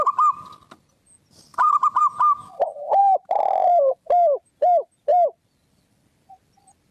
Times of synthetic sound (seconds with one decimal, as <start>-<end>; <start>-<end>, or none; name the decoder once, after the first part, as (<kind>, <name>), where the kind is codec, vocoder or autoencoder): 1.5-2.0 (vocoder, BigVGAN v2); 3.0-3.8